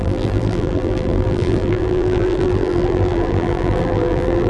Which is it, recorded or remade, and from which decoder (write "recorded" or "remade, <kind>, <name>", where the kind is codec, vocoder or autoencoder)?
remade, vocoder, BigVGAN v2